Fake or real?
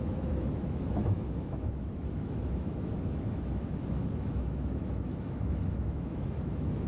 fake